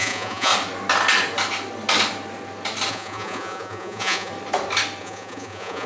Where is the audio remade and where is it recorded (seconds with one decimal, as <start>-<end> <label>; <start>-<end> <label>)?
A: 0.0-0.5 remade; 0.5-2.9 recorded; 2.9-4.3 remade; 4.3-5.0 recorded; 5.0-5.9 remade